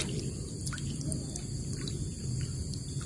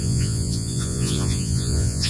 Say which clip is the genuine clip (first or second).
first